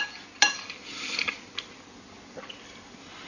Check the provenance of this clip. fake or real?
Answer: real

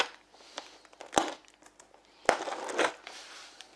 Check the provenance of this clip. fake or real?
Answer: real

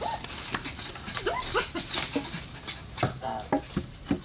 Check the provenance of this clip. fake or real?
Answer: real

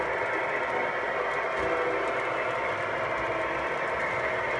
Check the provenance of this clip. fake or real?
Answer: real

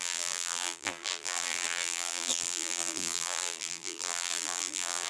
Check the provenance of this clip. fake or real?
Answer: fake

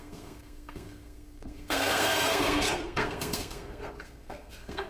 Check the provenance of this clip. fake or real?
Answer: fake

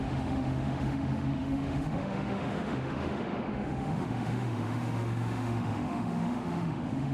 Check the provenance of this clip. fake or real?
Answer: fake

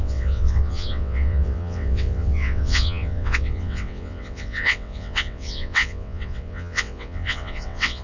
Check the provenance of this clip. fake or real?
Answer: fake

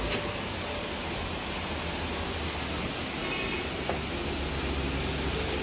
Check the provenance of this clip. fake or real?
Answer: real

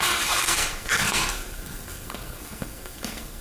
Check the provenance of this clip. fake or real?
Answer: fake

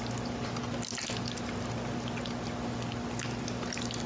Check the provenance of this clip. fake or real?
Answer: real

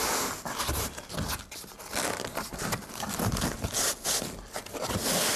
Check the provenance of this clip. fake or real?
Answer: real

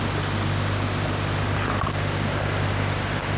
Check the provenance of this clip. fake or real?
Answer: real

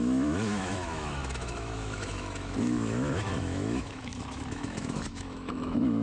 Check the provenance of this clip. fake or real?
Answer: fake